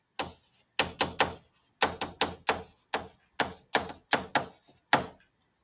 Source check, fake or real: real